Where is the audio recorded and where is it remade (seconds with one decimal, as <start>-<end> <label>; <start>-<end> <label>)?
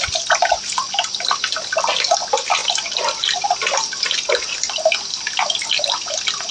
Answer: 0.0-6.5 recorded